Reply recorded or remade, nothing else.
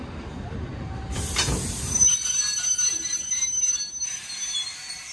recorded